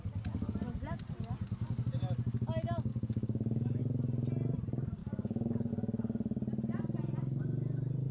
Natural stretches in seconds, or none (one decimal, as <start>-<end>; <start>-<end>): 0.0-2.9; 3.8-5.0; 5.7-8.1